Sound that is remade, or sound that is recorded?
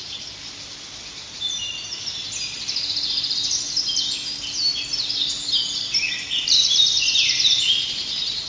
recorded